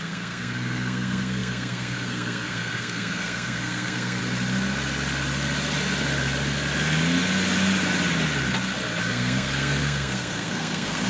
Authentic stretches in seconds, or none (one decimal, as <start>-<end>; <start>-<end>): 4.2-9.0